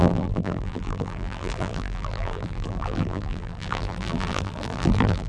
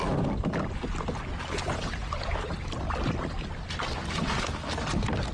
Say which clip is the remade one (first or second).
first